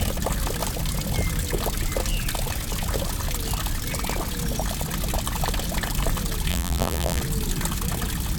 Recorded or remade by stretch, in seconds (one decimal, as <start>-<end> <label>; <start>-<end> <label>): 0.0-6.5 recorded; 6.5-7.2 remade; 7.2-8.4 recorded